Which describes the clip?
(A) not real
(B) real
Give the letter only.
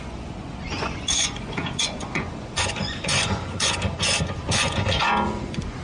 A